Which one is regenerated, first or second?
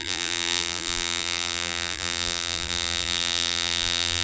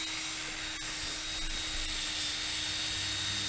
first